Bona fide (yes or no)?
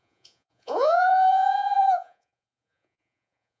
no